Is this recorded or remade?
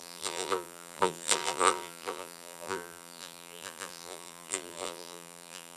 remade